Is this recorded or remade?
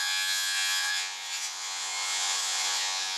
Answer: remade